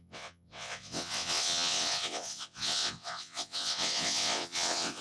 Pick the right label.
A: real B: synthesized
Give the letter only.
B